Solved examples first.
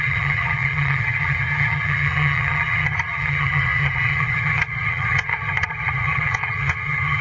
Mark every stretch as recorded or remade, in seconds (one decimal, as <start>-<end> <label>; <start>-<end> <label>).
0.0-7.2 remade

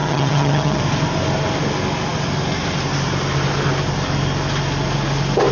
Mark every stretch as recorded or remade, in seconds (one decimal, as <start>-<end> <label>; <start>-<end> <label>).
0.0-0.8 remade; 0.8-5.5 recorded

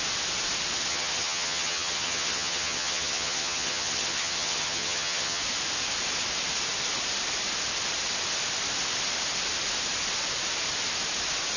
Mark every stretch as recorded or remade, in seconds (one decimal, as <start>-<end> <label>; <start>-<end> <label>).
0.0-0.9 recorded; 0.9-5.4 remade; 5.4-11.6 recorded

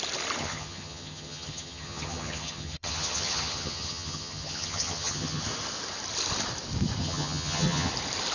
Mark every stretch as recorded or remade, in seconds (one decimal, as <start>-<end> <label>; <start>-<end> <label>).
0.0-0.4 recorded; 0.4-5.4 remade; 5.4-7.0 recorded; 7.0-7.9 remade; 7.9-8.3 recorded

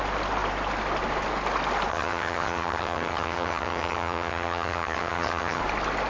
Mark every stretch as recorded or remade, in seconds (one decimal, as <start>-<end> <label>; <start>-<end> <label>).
0.0-1.9 recorded; 1.9-5.6 remade; 5.6-6.1 recorded

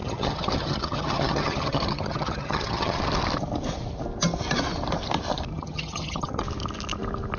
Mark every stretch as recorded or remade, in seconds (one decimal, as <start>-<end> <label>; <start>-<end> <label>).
0.0-3.0 remade; 3.0-5.5 recorded; 5.5-6.4 remade; 6.4-7.4 recorded

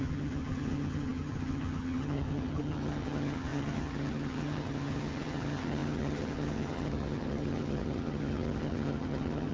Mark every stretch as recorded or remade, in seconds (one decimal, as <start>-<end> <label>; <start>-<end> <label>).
0.0-9.5 remade

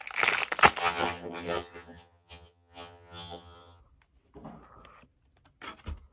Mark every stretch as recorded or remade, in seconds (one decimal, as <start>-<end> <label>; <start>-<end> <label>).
0.0-0.8 recorded; 0.8-3.8 remade; 3.8-6.1 recorded